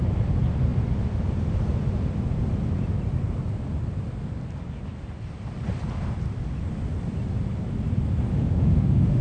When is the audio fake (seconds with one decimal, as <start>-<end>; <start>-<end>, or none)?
8.3-9.2